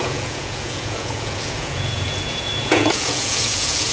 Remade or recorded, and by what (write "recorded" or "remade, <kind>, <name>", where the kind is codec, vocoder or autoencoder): remade, vocoder, Vocos